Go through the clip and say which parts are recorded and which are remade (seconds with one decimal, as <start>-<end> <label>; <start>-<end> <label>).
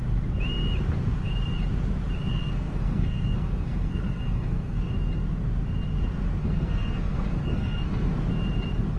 0.0-2.3 recorded; 2.3-4.9 remade; 4.9-6.4 recorded; 6.4-8.1 remade; 8.1-9.0 recorded